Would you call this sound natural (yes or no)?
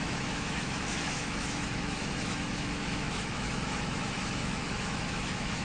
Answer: no